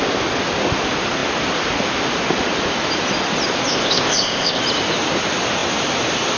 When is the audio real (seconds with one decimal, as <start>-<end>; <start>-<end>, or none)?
0.0-3.7; 4.6-6.4

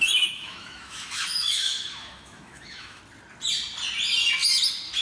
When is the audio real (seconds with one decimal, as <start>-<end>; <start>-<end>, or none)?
3.0-5.0

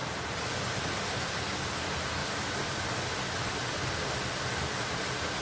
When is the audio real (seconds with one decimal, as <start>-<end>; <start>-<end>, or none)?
0.0-5.4